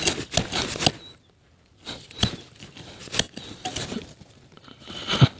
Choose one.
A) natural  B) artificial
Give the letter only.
A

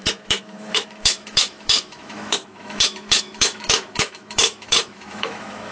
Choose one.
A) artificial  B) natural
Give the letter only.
A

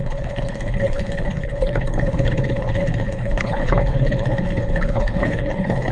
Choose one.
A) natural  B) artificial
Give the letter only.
B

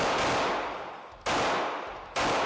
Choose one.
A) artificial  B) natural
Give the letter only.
B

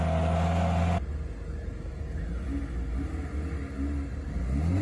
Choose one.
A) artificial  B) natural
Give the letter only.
B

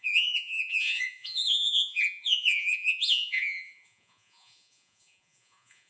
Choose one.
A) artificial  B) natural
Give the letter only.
A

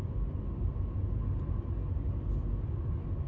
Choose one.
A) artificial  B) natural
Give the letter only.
B